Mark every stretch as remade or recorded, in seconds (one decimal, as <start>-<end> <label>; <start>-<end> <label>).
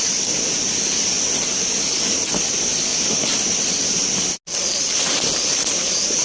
0.0-6.2 recorded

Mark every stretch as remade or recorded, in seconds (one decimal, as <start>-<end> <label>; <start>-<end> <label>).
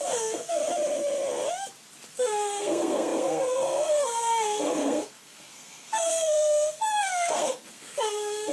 0.0-0.6 remade; 0.6-2.1 recorded; 2.1-8.5 remade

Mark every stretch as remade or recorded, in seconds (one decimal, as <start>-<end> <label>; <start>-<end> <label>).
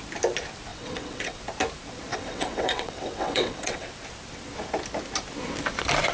0.0-0.7 recorded; 0.7-1.4 remade; 1.4-2.1 recorded; 2.1-3.9 remade; 3.9-6.1 recorded